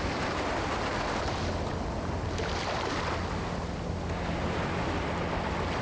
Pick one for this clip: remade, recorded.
recorded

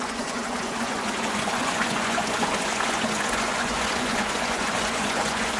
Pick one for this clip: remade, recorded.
remade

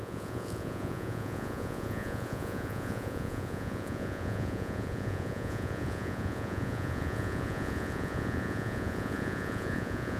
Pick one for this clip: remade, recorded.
remade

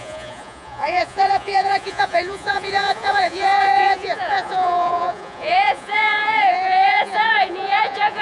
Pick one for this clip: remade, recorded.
remade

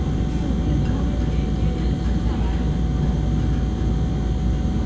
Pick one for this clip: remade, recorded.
recorded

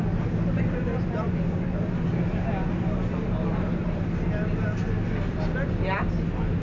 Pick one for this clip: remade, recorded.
recorded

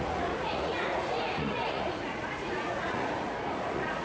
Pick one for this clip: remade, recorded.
remade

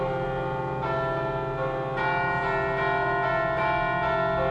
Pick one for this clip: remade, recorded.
recorded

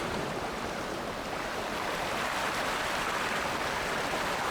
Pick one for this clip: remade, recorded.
recorded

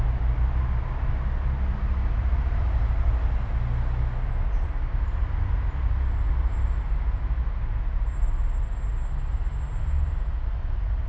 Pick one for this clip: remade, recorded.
recorded